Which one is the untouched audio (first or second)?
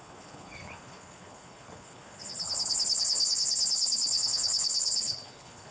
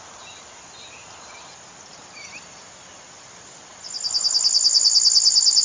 second